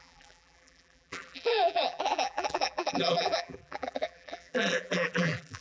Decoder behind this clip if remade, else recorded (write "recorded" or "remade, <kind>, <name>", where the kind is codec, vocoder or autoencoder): remade, vocoder, BigVGAN v2